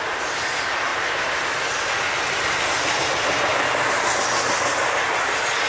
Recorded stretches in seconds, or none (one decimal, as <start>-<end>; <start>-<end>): 0.0-5.7